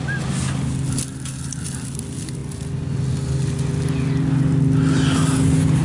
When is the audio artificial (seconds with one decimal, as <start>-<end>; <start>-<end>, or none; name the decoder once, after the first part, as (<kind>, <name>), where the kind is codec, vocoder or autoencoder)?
none